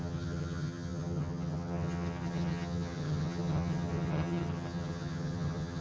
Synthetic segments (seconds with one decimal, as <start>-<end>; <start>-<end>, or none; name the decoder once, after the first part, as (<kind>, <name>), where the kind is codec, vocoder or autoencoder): 0.0-5.8 (vocoder, HiFi-GAN)